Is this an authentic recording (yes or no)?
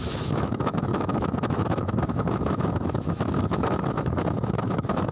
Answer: no